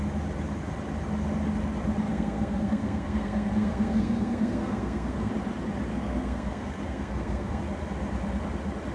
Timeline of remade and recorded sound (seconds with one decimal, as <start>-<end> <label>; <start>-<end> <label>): 0.0-2.1 recorded; 2.1-5.3 remade; 5.3-5.9 recorded; 5.9-7.6 remade; 7.6-8.9 recorded